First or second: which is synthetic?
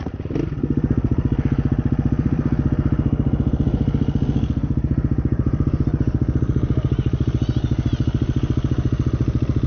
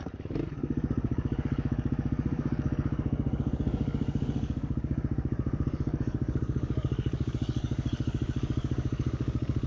second